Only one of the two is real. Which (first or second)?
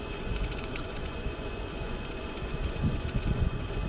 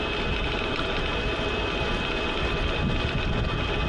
second